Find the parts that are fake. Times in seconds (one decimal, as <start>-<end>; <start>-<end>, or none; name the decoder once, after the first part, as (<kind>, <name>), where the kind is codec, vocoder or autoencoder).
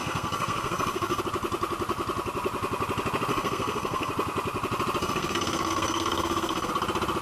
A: 0.0-1.2 (codec, SNAC); 3.3-4.1; 5.0-6.7